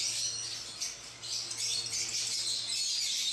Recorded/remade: recorded